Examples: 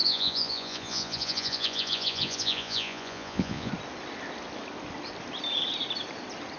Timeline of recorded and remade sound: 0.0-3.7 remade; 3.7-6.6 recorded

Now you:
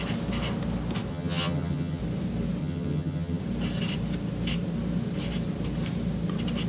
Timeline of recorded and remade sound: 0.0-1.1 recorded; 1.1-2.0 remade; 2.0-2.6 recorded; 2.6-3.4 remade; 3.4-6.7 recorded

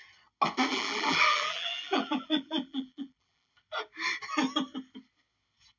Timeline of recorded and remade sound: 0.0-0.7 recorded; 0.7-3.5 remade; 3.5-5.8 recorded

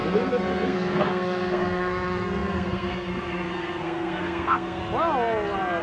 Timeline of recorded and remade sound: 0.0-4.8 remade; 4.8-5.8 recorded

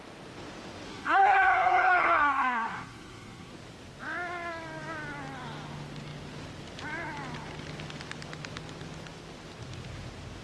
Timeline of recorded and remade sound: 0.0-0.9 recorded; 0.9-3.5 remade; 3.5-10.4 recorded

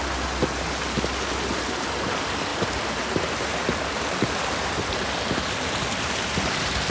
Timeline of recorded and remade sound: 0.0-6.9 recorded

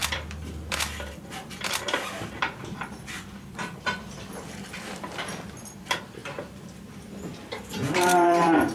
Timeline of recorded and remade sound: 0.0-8.7 remade